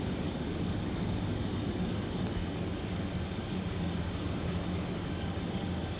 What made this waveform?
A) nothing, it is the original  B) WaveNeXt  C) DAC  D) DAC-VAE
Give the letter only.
C